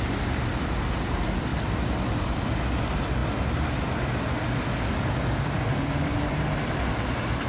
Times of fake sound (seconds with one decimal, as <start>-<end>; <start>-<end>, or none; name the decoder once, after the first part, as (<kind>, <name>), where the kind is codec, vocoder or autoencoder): none